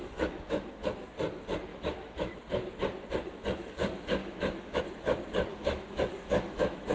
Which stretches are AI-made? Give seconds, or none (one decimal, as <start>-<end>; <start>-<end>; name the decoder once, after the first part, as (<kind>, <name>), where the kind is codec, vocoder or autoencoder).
0.0-0.7 (autoencoder, DAC-VAE); 1.7-2.3; 4.2-4.8; 5.5-6.9